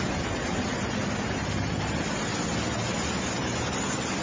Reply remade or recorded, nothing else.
recorded